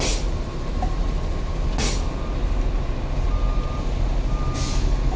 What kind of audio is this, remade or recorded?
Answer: recorded